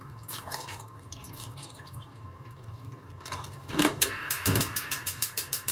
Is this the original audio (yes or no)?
no